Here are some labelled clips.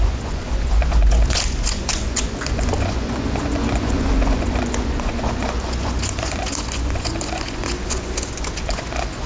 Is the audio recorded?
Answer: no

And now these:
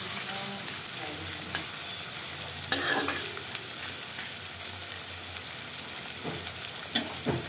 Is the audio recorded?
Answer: yes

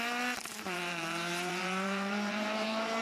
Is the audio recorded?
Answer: no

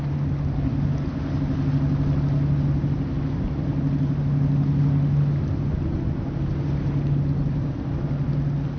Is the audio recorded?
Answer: yes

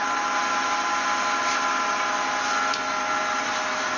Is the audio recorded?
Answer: yes